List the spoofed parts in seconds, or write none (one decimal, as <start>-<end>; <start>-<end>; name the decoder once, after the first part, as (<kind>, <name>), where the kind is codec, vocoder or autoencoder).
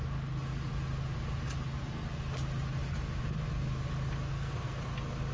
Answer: 4.3-4.8 (codec, SNAC)